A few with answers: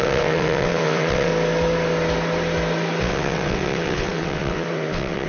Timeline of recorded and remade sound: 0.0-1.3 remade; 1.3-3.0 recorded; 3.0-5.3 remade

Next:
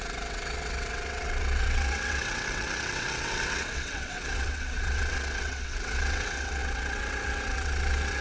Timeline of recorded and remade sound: 0.0-8.2 remade